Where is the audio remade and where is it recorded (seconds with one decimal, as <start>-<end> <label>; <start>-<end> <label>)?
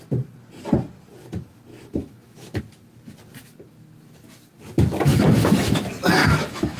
0.0-1.7 recorded; 1.7-2.6 remade; 2.6-5.1 recorded; 5.1-5.8 remade; 5.8-6.2 recorded; 6.2-6.8 remade